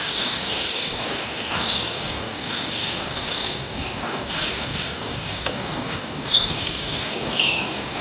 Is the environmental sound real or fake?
fake